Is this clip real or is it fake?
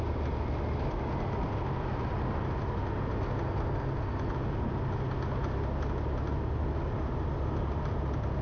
real